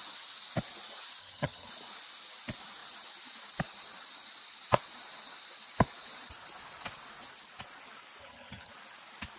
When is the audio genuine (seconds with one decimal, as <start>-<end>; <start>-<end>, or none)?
0.0-1.2; 1.7-8.2; 8.7-9.4